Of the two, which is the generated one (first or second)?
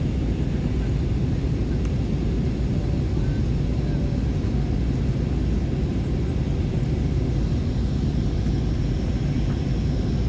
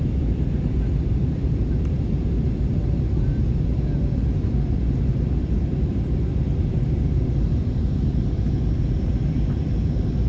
second